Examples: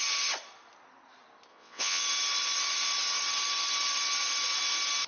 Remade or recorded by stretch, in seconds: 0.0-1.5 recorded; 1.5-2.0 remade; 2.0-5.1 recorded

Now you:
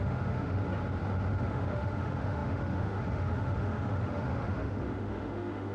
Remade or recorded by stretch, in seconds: 0.0-0.6 remade; 0.6-1.3 recorded; 1.3-5.7 remade

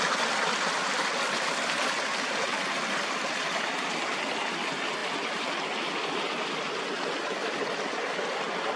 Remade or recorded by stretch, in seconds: 0.0-8.8 recorded

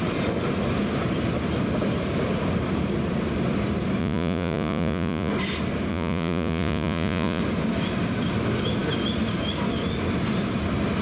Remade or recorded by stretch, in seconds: 0.0-4.0 recorded; 4.0-5.3 remade; 5.3-5.9 recorded; 5.9-7.4 remade; 7.4-11.0 recorded

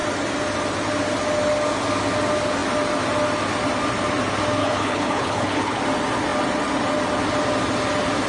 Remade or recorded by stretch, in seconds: 0.0-4.6 recorded; 4.6-5.8 remade; 5.8-8.3 recorded

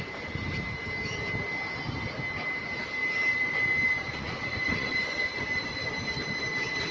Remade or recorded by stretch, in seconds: 0.0-3.0 recorded; 3.0-5.4 remade; 5.4-6.9 recorded